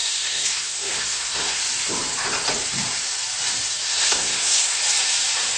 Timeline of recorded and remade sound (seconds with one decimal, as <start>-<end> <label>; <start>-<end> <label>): 0.0-1.6 remade; 1.6-3.7 recorded; 3.7-4.8 remade; 4.8-5.6 recorded